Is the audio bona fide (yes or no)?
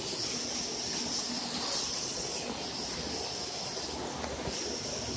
yes